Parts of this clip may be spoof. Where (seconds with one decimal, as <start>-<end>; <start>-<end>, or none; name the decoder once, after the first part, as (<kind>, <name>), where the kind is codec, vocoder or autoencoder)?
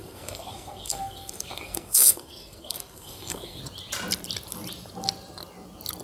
0.0-3.6 (codec, SNAC)